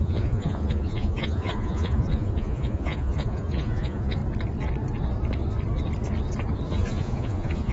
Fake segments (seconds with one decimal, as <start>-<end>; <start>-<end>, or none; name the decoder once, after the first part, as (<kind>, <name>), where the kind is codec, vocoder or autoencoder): 0.0-4.2 (vocoder, Vocos); 6.7-7.7